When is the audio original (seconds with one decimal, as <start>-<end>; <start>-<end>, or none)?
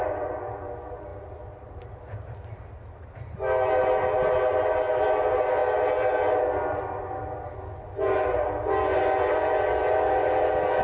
0.0-10.8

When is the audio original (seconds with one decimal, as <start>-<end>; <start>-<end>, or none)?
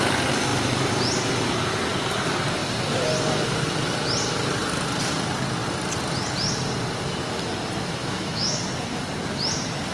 0.0-8.0; 8.6-9.9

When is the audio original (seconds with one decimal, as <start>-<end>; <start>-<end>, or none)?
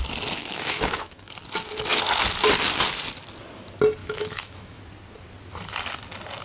0.0-0.4; 1.3-4.0; 4.8-6.4